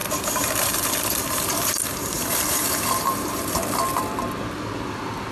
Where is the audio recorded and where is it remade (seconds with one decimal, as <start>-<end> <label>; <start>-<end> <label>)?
0.0-3.6 remade; 3.6-5.3 recorded